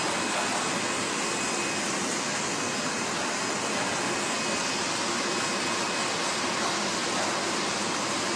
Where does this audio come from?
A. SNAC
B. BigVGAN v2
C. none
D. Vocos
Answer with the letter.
C